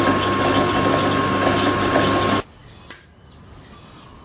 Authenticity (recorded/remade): recorded